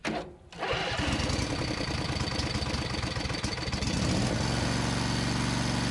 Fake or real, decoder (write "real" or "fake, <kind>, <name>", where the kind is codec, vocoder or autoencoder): real